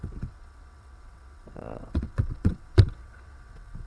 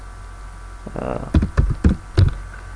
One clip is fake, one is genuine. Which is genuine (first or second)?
second